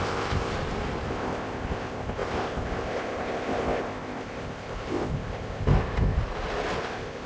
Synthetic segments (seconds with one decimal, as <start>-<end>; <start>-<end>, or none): 0.0-0.5; 1.1-6.2; 6.8-7.3